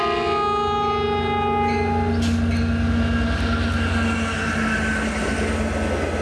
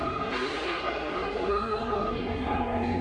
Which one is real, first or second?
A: first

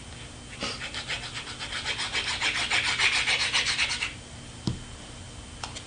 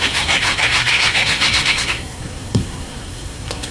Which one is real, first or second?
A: first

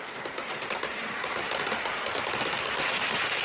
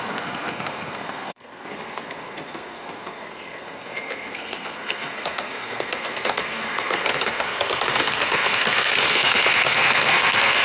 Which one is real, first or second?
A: first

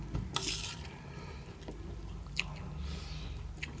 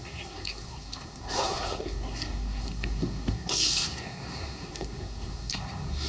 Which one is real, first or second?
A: first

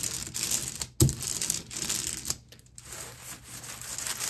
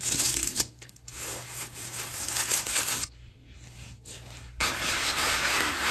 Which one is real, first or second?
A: first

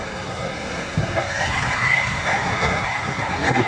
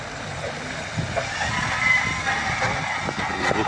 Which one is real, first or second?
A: second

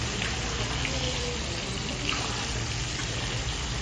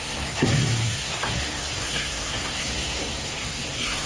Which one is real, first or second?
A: first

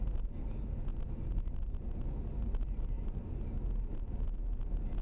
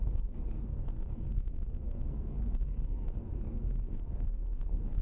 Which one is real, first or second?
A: first